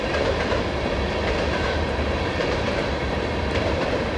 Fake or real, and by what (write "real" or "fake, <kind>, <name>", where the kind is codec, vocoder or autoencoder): fake, vocoder, BigVGAN v2